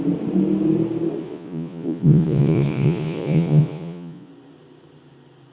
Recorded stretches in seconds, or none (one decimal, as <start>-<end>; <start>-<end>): 0.0-1.2; 4.3-5.5